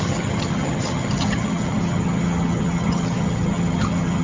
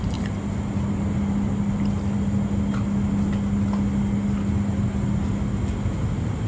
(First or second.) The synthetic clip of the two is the first